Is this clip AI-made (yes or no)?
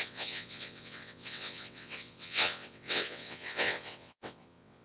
yes